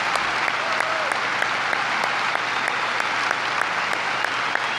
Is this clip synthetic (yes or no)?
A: no